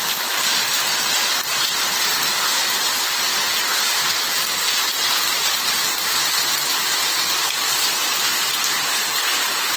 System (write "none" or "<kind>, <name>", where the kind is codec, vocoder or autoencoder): none